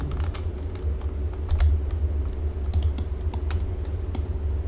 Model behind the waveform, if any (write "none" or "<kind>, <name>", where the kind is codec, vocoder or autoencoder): none